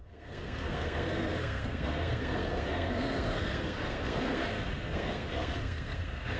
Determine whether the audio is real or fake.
fake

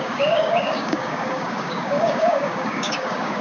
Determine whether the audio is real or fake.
fake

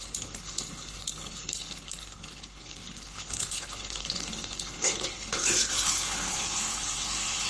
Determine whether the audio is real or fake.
fake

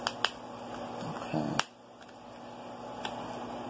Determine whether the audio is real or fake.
real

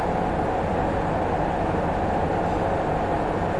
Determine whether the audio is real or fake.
real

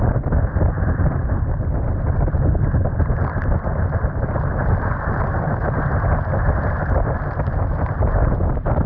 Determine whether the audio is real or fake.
real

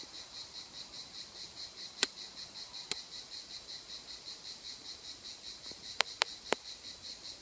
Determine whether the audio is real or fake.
real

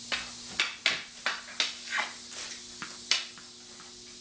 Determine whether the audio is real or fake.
real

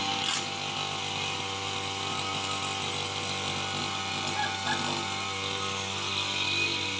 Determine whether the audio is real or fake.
real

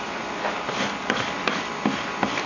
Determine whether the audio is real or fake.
real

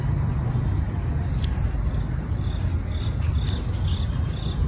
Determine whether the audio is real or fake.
real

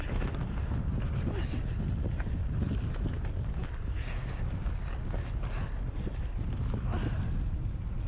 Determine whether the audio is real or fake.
real